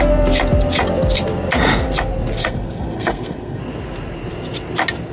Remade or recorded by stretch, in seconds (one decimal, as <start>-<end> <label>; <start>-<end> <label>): 0.0-2.4 recorded; 2.4-3.6 remade; 3.6-5.1 recorded